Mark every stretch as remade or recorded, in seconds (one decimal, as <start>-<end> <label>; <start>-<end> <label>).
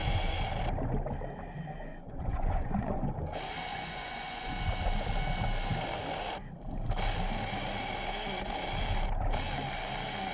0.0-1.9 recorded; 1.9-3.1 remade; 3.1-3.7 recorded; 3.7-4.5 remade; 4.5-10.3 recorded